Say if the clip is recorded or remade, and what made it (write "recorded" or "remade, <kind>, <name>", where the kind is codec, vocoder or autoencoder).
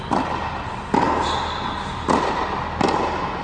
recorded